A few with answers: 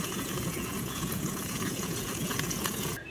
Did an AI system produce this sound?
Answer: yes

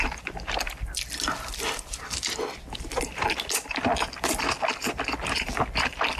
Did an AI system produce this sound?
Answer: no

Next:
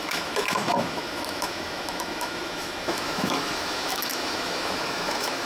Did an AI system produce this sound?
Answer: yes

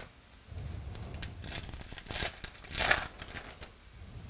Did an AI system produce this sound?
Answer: no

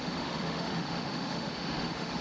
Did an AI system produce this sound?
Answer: yes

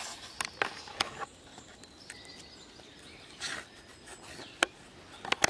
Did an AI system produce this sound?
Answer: no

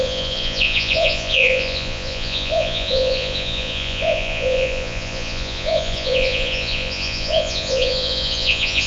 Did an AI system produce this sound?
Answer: yes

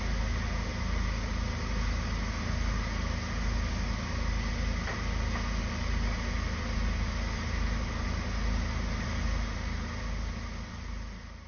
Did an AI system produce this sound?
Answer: no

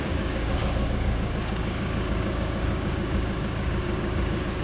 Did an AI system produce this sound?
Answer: yes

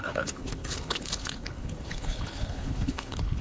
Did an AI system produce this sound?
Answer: yes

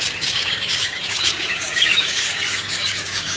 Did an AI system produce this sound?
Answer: yes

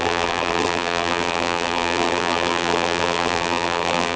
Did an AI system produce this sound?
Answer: yes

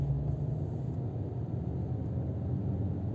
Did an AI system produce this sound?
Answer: no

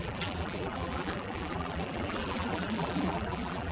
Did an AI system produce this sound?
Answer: yes